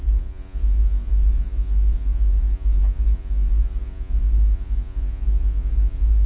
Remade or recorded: remade